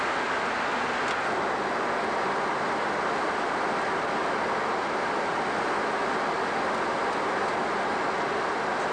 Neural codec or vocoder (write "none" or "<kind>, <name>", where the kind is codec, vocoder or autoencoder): none